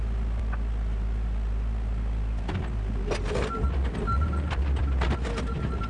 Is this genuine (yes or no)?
yes